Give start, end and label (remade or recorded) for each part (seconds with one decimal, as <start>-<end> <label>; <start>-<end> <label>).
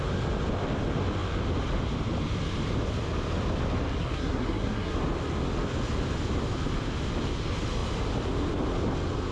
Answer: 0.0-4.0 recorded; 4.0-5.0 remade; 5.0-9.3 recorded